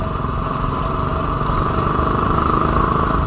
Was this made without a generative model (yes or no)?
yes